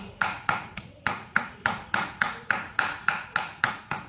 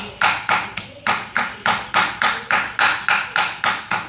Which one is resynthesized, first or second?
first